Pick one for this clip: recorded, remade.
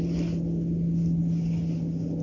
recorded